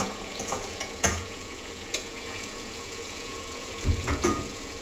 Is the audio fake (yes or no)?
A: yes